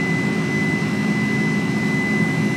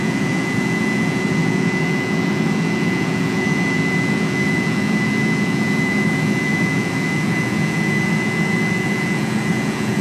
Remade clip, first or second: second